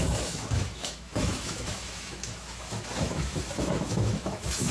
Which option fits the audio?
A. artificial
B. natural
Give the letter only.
A